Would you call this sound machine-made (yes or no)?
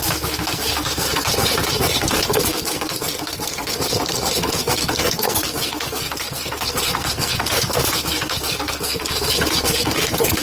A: yes